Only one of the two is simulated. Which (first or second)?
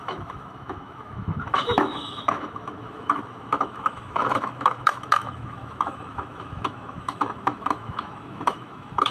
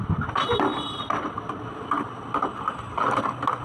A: first